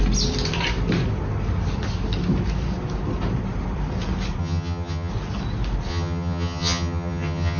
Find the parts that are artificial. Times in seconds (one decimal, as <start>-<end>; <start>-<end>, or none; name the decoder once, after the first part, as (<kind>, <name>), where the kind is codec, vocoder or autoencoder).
4.4-5.1 (vocoder, HiFi-GAN); 5.9-7.6